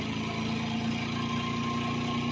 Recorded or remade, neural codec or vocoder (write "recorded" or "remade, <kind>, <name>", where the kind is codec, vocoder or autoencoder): recorded